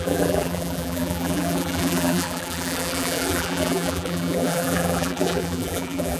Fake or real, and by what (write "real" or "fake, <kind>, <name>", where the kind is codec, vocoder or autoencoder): fake, vocoder, BigVGAN v2